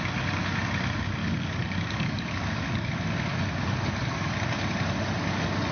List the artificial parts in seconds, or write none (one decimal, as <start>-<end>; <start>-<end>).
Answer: 1.2-2.9